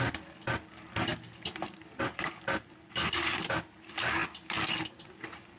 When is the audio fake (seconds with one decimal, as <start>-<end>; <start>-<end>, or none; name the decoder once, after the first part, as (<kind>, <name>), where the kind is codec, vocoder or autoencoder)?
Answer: none